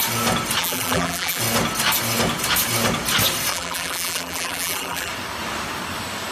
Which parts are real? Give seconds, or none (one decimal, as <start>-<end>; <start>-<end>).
0.0-0.6; 1.4-3.5; 5.1-6.3